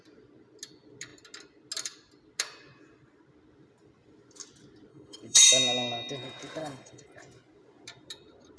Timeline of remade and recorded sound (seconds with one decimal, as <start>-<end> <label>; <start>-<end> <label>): 0.0-4.9 recorded; 4.9-5.5 remade; 5.5-6.6 recorded; 6.6-7.1 remade; 7.1-8.6 recorded